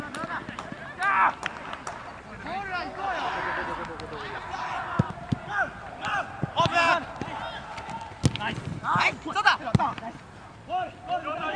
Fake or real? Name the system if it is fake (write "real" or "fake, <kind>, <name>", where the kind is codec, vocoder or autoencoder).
real